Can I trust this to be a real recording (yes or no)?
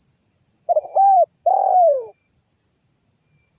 no